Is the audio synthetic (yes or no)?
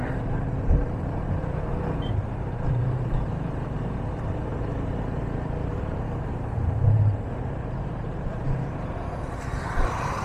yes